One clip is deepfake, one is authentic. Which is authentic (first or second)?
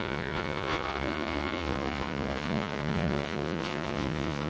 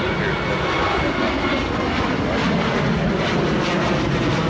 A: second